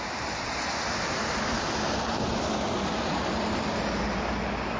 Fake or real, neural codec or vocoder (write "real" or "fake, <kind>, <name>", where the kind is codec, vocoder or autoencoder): real